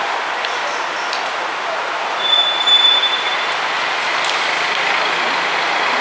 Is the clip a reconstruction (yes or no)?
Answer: no